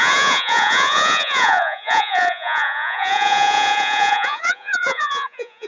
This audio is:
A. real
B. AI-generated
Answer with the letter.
B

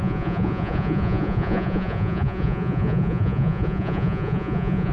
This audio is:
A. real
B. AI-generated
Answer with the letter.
B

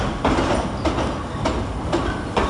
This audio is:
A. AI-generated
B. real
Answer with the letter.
B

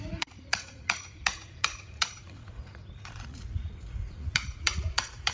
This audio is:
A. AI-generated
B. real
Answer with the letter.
A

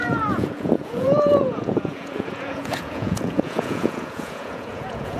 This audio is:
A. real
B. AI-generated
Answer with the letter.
B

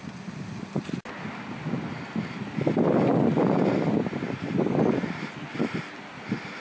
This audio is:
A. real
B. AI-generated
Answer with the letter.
A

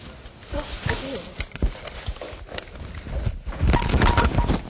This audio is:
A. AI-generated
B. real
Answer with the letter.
B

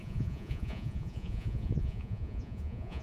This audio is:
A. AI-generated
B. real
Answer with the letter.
A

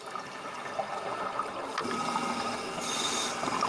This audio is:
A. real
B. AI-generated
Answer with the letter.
A